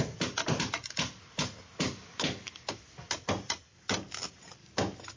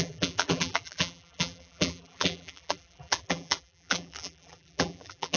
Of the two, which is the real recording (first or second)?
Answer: first